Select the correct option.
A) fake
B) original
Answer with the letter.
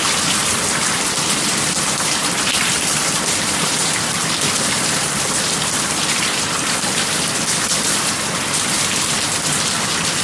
A